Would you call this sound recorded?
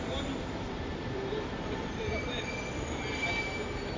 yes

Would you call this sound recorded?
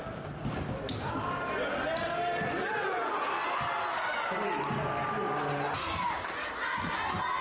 yes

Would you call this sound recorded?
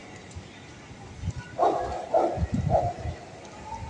yes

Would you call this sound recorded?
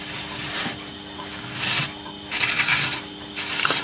yes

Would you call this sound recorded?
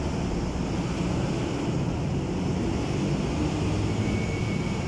yes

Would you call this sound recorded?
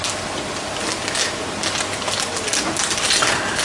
yes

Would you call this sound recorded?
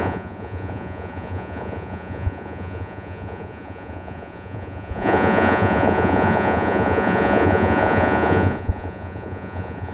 no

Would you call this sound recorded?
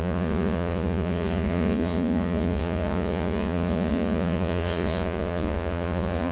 no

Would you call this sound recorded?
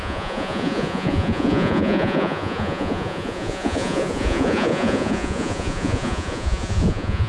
no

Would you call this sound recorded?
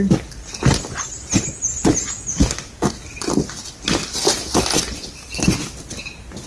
yes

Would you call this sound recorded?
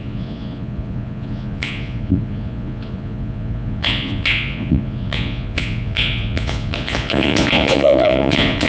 no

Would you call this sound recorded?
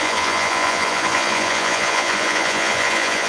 no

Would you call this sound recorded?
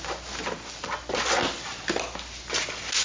yes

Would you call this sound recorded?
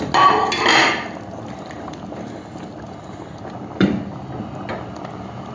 yes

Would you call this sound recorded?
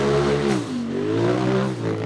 yes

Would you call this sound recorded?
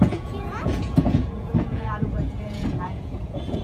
no